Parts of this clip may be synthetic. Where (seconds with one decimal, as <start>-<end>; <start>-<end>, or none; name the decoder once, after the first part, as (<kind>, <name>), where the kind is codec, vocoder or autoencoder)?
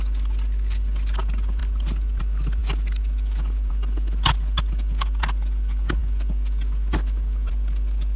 none